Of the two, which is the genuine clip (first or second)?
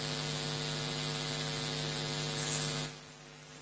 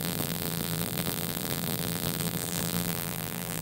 first